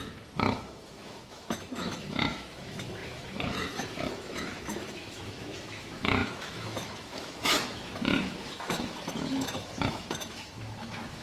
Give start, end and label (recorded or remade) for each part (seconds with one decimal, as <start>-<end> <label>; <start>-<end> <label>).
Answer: 0.0-11.2 remade